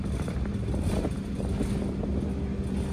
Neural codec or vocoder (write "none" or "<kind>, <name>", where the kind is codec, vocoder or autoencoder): none